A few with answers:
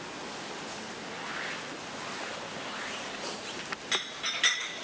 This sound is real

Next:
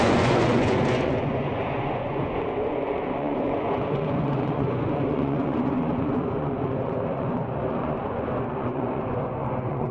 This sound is fake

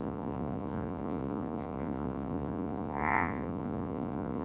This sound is fake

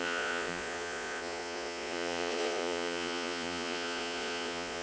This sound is fake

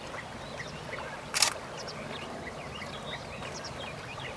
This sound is real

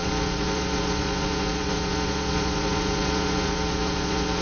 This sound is fake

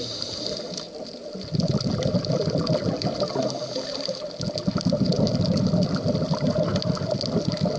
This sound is real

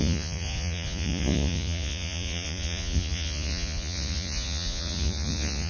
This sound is fake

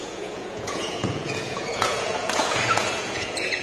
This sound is fake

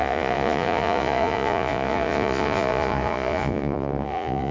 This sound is fake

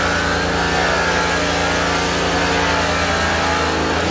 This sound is real